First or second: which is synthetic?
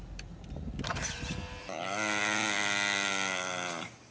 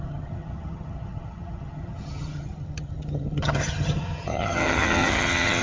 second